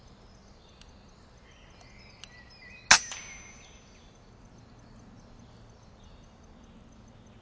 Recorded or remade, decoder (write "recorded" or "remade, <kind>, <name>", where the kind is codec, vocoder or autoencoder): recorded